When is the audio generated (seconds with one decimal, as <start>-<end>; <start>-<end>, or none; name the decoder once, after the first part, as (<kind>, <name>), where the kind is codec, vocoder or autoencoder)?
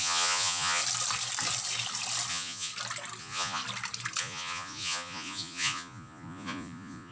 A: 0.0-0.8 (vocoder, Vocos); 2.3-2.7; 3.2-3.6; 4.2-7.1